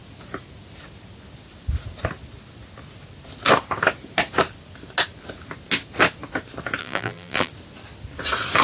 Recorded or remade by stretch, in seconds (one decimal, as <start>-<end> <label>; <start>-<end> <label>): 0.0-6.8 recorded; 6.8-7.5 remade; 7.5-8.6 recorded